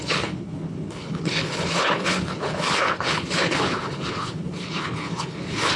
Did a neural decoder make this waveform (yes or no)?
yes